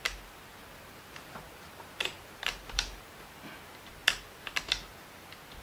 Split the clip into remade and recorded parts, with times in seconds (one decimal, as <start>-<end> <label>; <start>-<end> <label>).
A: 0.0-0.6 recorded; 0.6-3.4 remade; 3.4-5.6 recorded